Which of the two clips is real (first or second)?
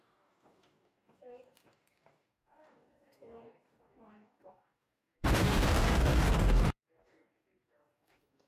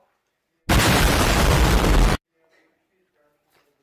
second